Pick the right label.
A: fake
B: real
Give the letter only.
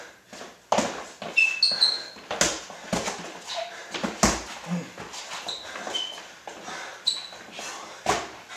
B